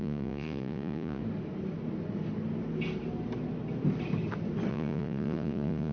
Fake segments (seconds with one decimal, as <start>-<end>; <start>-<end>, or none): 0.0-1.2; 4.7-5.9